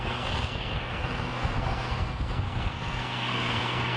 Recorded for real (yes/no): no